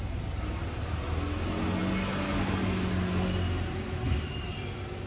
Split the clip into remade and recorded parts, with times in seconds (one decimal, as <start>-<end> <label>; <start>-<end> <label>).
0.0-5.1 recorded